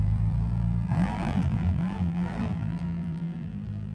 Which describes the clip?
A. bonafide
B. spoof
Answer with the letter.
B